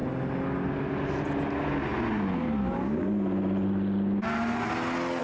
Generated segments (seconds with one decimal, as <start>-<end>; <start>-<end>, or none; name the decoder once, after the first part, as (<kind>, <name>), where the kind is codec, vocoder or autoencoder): none